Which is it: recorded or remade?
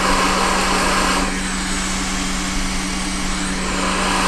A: recorded